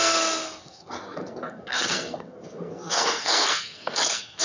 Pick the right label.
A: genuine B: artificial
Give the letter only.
B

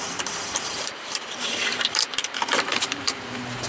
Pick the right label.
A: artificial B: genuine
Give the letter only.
A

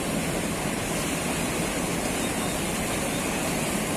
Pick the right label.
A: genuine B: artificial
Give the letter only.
A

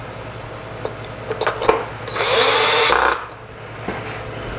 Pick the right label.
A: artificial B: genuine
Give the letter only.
B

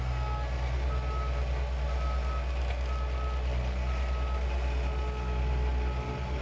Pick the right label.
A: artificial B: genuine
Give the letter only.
B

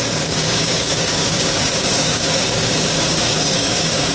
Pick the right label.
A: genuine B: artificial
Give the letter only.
B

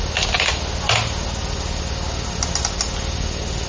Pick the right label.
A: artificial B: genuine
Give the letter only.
B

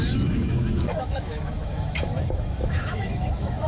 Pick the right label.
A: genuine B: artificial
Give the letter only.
B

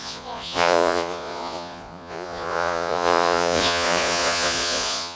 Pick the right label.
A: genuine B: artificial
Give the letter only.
B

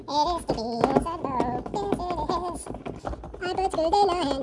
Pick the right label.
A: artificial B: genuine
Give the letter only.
B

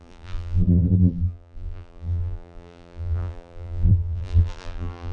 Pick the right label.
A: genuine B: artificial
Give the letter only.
B